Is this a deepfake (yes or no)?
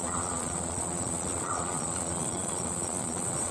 yes